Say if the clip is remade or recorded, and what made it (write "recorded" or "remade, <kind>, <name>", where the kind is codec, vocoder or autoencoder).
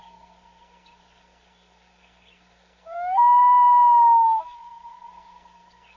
remade, codec, SNAC